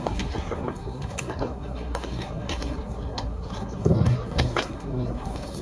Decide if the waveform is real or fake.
fake